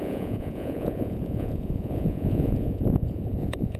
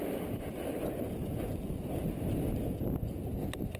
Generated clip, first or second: first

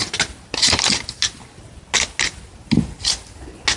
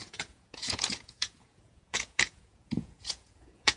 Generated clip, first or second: second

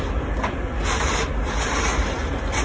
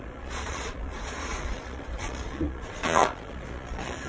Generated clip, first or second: second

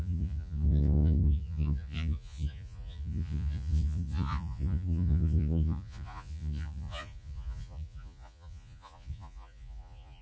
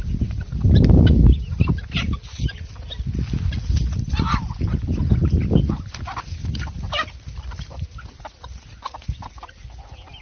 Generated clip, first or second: first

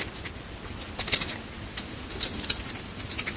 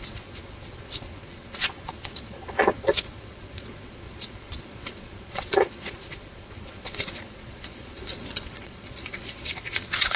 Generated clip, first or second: second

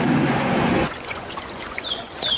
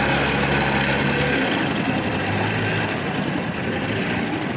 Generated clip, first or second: first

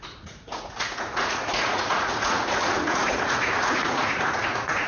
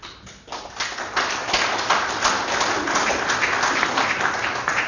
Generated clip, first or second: first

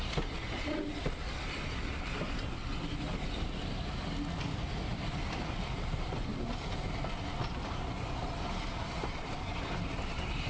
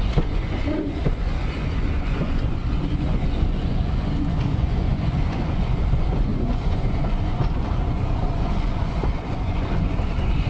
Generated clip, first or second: second